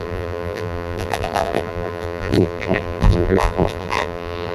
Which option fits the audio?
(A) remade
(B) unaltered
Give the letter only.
A